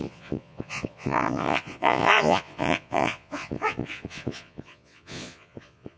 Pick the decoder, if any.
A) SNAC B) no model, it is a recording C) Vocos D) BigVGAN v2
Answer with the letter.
C